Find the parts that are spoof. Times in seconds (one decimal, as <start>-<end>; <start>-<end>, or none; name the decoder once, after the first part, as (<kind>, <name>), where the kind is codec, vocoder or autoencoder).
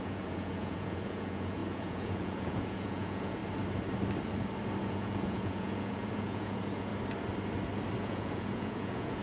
0.0-3.4 (vocoder, Vocos); 4.9-6.9; 8.0-9.2